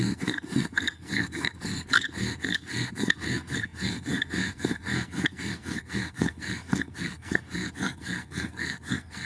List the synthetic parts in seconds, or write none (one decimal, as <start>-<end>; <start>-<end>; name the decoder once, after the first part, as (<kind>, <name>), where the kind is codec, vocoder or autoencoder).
0.0-9.3 (codec, SNAC)